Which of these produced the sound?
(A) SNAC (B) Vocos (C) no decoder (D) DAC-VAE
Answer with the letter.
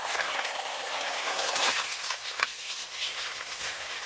A